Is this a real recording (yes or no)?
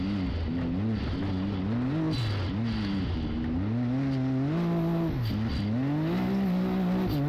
yes